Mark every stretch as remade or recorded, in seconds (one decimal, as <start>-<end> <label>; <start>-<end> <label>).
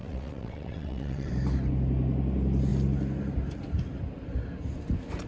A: 0.0-1.3 remade; 1.3-5.3 recorded